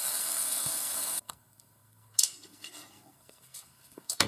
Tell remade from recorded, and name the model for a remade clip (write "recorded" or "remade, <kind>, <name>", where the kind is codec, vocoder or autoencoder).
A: remade, codec, SNAC